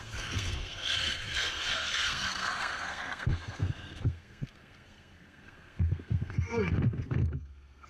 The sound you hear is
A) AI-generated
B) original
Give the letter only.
A